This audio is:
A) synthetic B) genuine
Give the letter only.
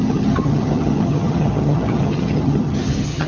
A